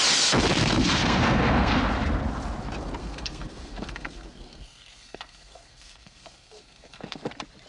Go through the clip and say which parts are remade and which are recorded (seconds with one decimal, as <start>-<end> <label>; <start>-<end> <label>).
0.0-0.6 recorded; 0.6-1.8 remade; 1.8-3.0 recorded; 3.0-7.3 remade; 7.3-7.7 recorded

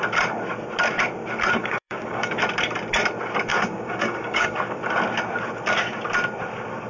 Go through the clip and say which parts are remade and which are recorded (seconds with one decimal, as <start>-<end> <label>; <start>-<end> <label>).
0.0-1.6 recorded; 1.6-2.4 remade; 2.4-3.5 recorded; 3.5-4.8 remade; 4.8-6.9 recorded

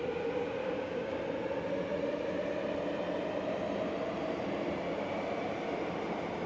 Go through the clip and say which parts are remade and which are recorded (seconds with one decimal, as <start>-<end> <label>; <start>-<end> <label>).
0.0-0.6 recorded; 0.6-1.2 remade; 1.2-6.5 recorded

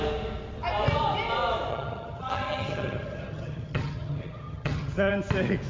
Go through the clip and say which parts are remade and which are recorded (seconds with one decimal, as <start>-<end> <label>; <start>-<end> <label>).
0.0-1.7 recorded; 1.7-5.1 remade; 5.1-5.7 recorded

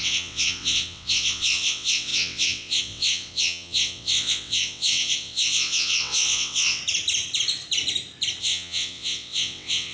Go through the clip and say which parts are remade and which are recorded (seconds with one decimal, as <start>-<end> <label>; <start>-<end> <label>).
0.0-6.8 remade; 6.8-8.4 recorded; 8.4-9.9 remade

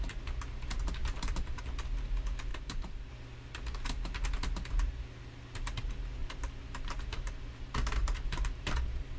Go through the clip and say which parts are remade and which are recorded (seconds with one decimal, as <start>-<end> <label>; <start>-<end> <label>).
0.0-1.0 recorded; 1.0-1.6 remade; 1.6-2.5 recorded; 2.5-3.1 remade; 3.1-6.2 recorded; 6.2-9.2 remade

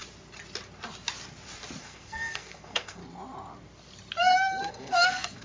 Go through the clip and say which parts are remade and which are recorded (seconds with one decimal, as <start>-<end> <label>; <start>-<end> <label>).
0.0-1.8 recorded; 1.8-3.0 remade; 3.0-4.7 recorded; 4.7-5.4 remade